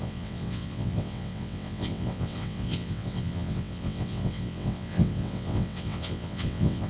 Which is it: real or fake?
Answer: fake